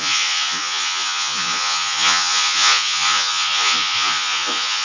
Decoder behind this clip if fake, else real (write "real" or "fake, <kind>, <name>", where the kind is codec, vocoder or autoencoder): fake, vocoder, Vocos